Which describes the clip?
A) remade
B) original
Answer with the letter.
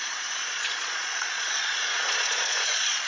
A